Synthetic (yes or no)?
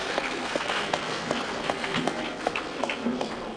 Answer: yes